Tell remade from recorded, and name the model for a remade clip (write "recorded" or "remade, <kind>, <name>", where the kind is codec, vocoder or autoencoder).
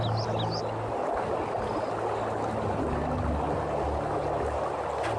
recorded